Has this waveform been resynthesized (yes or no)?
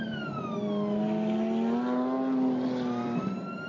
no